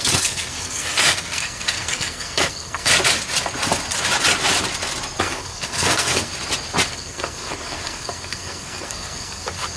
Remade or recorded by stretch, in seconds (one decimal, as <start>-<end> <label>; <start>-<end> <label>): 0.0-2.9 remade; 2.9-5.2 recorded; 5.2-6.3 remade; 6.3-6.9 recorded; 6.9-9.8 remade

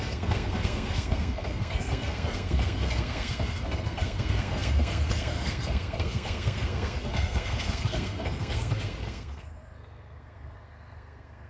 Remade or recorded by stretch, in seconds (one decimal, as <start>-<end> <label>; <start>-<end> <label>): 0.0-11.5 remade